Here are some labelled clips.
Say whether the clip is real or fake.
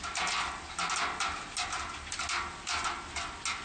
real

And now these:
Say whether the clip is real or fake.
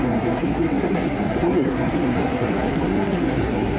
fake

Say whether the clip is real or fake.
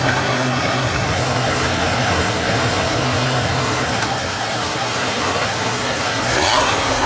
fake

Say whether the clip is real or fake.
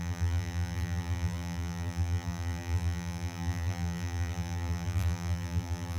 fake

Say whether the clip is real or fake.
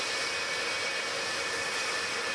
real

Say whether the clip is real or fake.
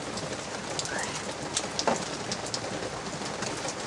real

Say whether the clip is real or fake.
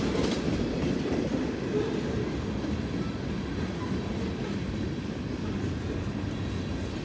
real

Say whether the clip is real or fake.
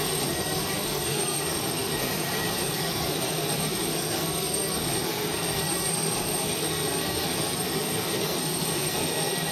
fake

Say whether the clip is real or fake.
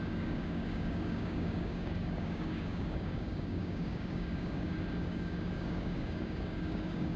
fake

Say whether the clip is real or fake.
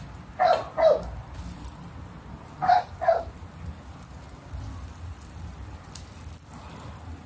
real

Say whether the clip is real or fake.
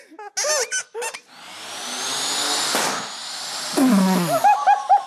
real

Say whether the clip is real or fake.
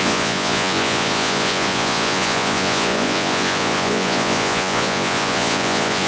fake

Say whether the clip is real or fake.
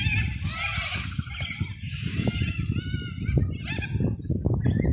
real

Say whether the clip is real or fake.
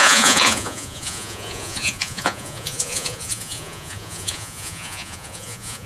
fake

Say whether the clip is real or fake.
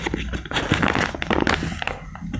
real